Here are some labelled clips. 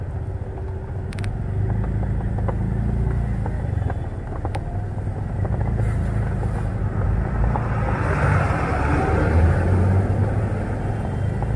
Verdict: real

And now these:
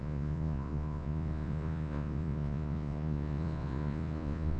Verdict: fake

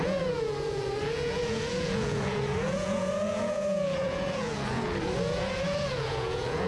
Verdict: fake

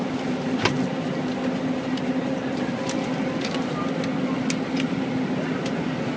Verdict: real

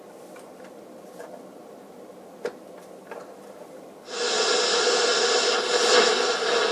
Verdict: real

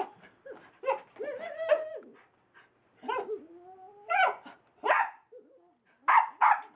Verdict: real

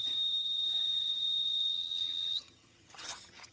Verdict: fake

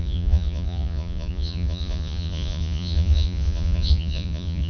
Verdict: fake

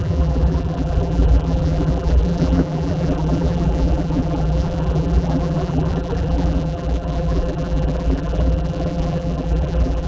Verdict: fake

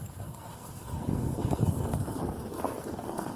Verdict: fake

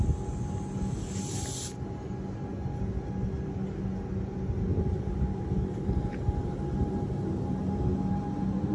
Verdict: real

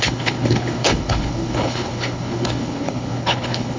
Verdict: fake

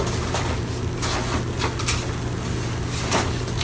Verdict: real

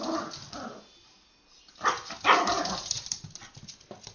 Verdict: real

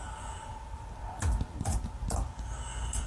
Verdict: real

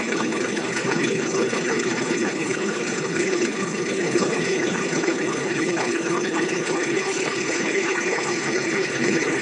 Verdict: fake